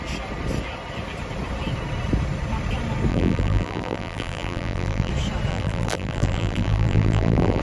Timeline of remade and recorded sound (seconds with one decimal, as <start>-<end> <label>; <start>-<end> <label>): 0.0-3.1 recorded; 3.1-5.1 remade; 5.1-5.5 recorded; 5.5-7.6 remade

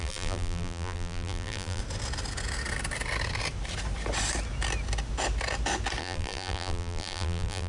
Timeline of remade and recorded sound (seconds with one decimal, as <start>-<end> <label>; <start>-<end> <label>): 0.0-1.8 remade; 1.8-6.0 recorded; 6.0-7.7 remade

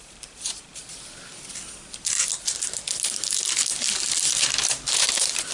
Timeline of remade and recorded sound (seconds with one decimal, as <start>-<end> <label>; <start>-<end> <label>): 0.0-0.7 remade; 0.7-3.3 recorded; 3.3-3.7 remade; 3.7-4.4 recorded; 4.4-5.5 remade